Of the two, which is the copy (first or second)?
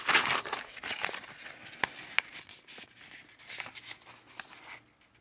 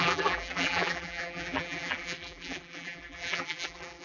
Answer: second